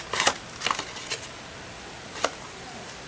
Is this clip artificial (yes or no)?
no